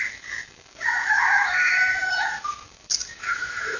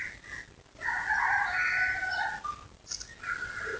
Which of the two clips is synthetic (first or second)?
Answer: first